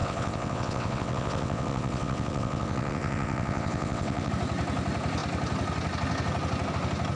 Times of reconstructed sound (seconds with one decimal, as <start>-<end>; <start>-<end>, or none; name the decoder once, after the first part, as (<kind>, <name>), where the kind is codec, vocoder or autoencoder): 0.0-4.3 (vocoder, WaveNeXt)